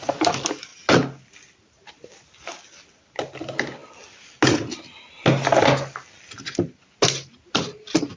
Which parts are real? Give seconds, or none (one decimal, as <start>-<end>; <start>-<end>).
0.0-8.2